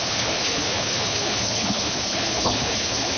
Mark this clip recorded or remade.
remade